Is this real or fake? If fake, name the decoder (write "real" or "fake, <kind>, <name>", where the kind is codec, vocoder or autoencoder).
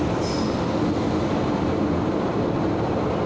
real